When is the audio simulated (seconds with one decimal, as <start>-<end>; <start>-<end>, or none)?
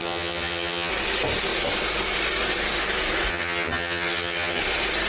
0.0-0.9; 3.3-4.6